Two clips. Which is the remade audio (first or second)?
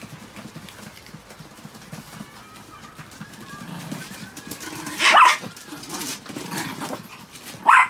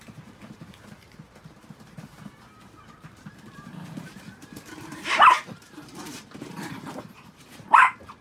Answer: second